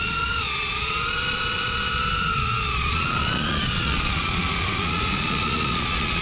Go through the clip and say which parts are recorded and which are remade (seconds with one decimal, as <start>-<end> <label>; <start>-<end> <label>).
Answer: 0.0-6.2 remade